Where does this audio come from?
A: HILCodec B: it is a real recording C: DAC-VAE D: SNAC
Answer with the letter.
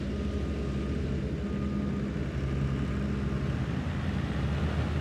B